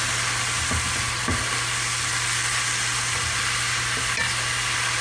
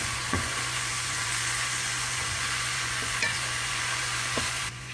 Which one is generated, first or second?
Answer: second